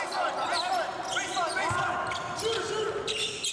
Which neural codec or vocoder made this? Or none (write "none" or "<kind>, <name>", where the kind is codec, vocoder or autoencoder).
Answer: none